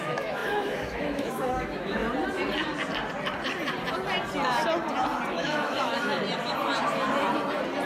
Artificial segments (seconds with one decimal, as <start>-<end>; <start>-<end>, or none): 0.0-2.0; 5.3-6.1